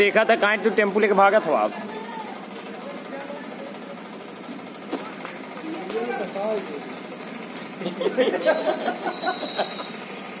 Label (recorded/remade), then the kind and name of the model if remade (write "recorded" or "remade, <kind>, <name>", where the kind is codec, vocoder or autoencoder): recorded